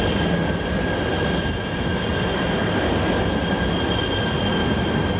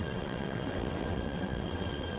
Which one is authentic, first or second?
first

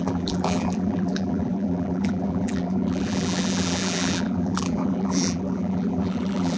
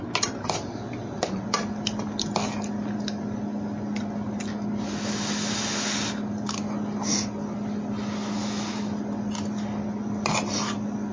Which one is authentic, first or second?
second